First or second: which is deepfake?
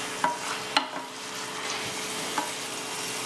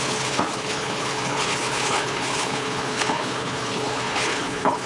second